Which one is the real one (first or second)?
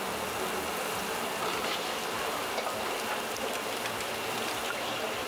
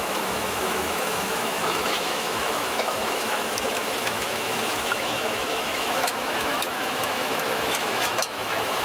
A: first